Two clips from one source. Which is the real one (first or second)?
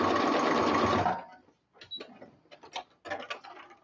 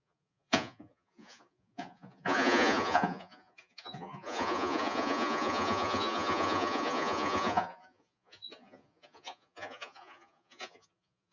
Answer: first